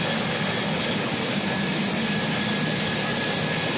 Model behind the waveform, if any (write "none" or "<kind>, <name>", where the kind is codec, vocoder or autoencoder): none